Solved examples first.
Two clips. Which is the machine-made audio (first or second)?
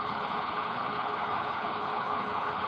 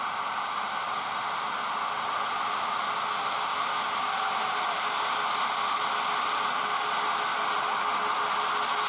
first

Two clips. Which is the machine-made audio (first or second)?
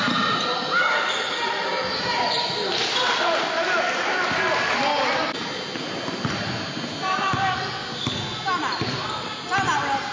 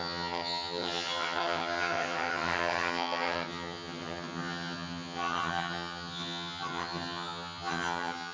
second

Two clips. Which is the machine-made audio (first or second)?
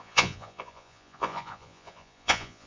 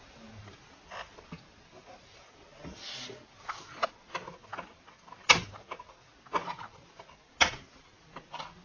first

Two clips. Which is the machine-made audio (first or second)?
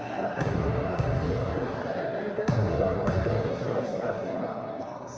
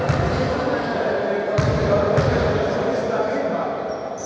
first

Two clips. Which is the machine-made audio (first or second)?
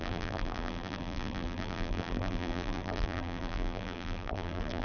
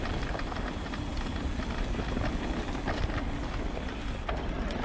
first